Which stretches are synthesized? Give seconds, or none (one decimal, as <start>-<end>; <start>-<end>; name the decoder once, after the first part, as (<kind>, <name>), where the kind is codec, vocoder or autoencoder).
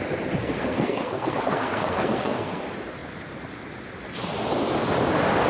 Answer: 0.4-2.6 (codec, SNAC)